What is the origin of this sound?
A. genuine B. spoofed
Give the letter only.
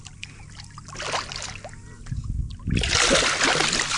A